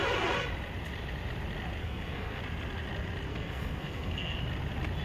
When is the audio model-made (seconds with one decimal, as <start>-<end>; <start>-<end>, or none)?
1.8-2.4; 3.3-4.4